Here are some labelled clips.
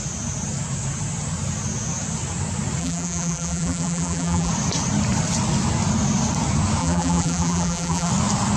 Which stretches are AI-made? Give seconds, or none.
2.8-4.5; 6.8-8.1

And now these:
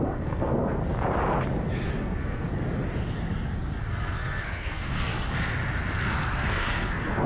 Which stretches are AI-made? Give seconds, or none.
0.0-0.8; 2.0-2.5; 3.8-5.1; 6.5-7.3

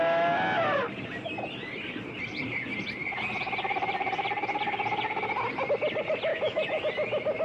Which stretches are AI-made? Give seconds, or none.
6.3-6.8

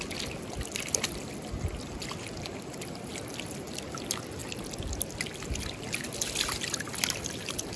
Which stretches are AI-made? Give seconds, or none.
none

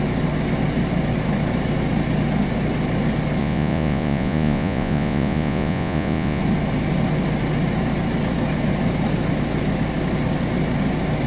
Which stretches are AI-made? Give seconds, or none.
3.4-6.4

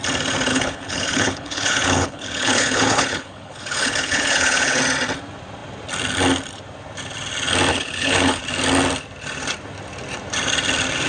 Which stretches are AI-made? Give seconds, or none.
0.5-4.8; 7.7-8.4